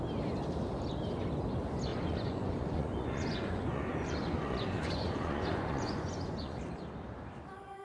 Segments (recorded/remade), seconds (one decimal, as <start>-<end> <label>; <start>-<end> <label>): 0.0-1.9 recorded; 1.9-6.6 remade; 6.6-7.8 recorded